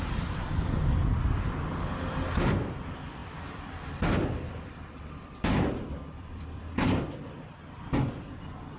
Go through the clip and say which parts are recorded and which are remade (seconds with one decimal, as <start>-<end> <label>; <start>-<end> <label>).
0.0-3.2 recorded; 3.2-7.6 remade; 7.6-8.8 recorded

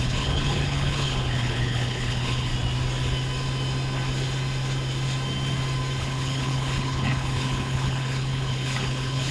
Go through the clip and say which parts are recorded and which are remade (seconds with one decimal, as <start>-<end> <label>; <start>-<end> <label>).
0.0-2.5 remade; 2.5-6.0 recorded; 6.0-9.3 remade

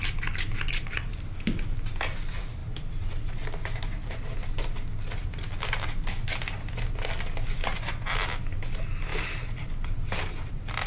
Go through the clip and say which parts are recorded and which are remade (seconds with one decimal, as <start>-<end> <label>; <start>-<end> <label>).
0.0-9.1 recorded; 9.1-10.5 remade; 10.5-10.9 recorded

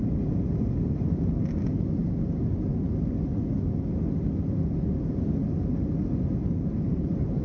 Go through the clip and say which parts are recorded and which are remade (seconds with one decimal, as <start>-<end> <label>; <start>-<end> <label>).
0.0-7.4 recorded